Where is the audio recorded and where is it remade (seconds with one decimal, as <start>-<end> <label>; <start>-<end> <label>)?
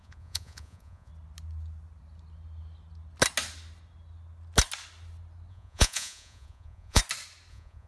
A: 0.0-1.1 remade; 1.1-5.5 recorded; 5.5-7.0 remade; 7.0-7.5 recorded; 7.5-7.9 remade